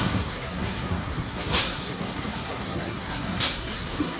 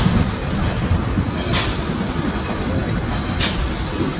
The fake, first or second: first